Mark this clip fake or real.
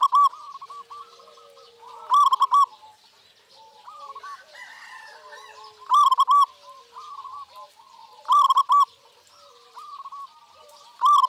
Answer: real